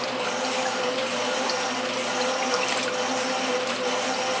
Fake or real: real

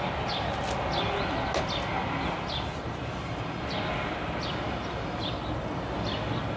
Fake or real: real